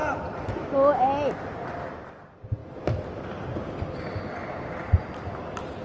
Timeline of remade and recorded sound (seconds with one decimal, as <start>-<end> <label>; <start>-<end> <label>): 0.0-5.8 recorded